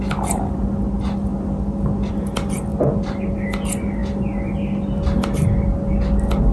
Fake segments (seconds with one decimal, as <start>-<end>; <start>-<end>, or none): none